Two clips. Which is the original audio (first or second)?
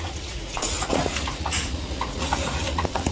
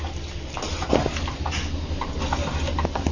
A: second